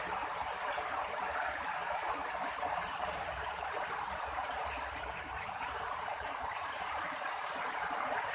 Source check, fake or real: fake